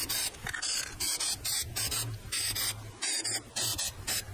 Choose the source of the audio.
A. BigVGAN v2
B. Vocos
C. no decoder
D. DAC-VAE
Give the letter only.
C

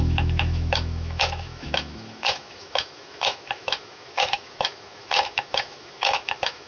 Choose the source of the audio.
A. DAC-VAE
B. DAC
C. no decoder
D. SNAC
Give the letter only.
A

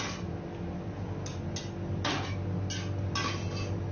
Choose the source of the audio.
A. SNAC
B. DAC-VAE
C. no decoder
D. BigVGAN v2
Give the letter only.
C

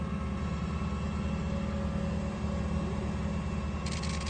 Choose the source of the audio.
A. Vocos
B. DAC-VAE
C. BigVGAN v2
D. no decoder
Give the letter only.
D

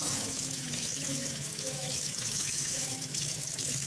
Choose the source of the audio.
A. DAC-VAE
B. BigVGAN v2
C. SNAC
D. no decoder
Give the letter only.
A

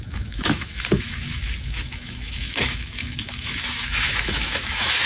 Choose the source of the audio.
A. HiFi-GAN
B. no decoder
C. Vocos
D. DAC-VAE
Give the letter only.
D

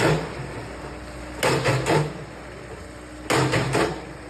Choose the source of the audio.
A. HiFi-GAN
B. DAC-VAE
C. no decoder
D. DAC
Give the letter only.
C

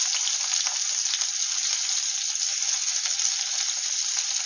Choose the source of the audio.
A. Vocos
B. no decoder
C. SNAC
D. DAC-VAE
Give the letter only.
B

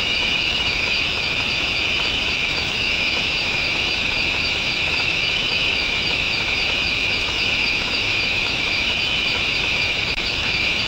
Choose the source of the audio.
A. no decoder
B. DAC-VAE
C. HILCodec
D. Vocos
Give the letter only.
B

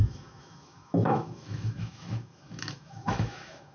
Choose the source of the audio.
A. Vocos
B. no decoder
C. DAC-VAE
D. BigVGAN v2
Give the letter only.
C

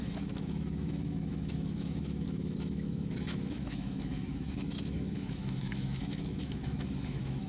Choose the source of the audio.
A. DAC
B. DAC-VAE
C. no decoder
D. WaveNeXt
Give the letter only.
B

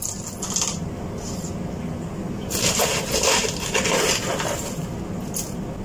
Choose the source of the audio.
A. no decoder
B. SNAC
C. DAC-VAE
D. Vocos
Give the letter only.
A